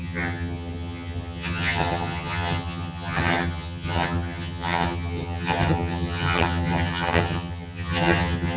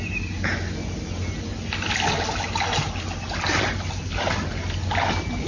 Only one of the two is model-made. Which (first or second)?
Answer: first